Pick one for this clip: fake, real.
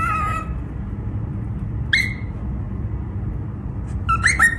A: real